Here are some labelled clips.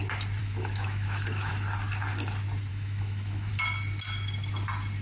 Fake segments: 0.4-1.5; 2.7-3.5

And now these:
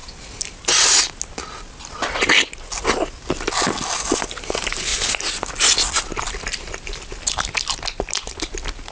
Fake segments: none